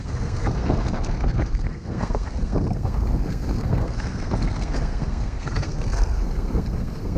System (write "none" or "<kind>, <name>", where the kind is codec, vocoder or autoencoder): codec, SNAC